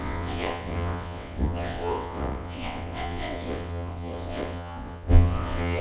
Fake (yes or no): yes